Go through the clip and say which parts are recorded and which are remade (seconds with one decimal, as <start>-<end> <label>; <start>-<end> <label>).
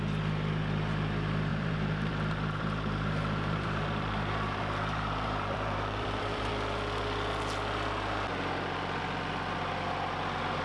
0.0-1.5 recorded; 1.5-6.5 remade; 6.5-10.6 recorded